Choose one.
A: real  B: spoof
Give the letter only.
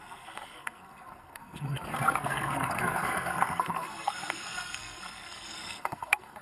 B